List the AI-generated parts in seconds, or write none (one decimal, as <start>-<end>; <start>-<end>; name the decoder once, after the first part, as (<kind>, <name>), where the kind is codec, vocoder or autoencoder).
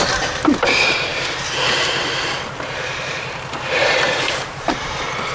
0.0-1.1 (vocoder, BigVGAN v2); 3.1-5.3